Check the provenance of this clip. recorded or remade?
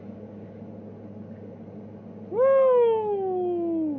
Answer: recorded